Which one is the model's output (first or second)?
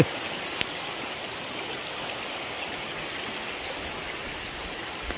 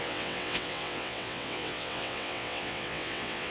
second